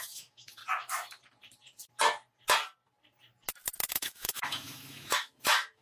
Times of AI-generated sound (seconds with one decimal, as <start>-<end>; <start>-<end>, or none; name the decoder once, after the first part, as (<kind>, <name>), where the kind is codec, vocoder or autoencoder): 0.0-0.6 (autoencoder, DAC-VAE); 3.9-5.8